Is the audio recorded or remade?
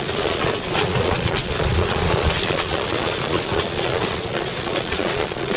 remade